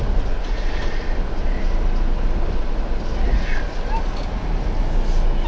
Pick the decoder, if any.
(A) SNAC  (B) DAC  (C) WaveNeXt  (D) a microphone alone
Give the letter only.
D